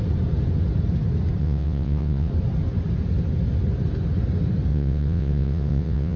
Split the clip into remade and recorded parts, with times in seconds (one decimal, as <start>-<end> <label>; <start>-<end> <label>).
0.0-1.4 recorded; 1.4-2.3 remade; 2.3-4.7 recorded; 4.7-6.2 remade